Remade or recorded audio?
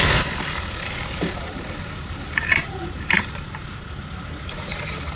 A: remade